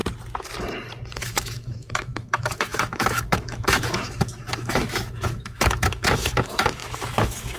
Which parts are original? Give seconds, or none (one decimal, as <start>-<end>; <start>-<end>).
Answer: 0.0-1.2